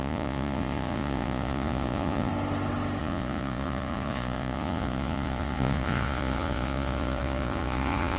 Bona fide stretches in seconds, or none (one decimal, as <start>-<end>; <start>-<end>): 2.3-3.0